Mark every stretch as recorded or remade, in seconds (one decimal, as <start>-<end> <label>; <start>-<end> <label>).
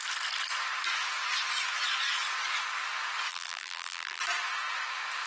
0.0-3.3 recorded; 3.3-4.2 remade; 4.2-5.3 recorded